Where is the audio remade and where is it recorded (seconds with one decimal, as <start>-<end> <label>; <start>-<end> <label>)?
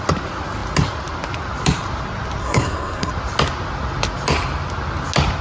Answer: 0.0-2.4 recorded; 2.4-3.1 remade; 3.1-5.4 recorded